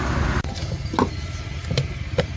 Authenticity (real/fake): real